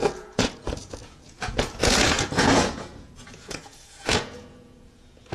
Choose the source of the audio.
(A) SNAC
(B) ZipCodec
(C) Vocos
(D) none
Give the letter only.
C